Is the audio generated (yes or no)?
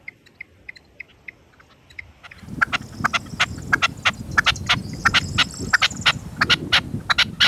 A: no